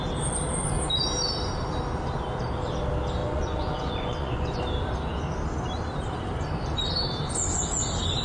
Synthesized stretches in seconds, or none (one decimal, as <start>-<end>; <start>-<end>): 3.2-4.6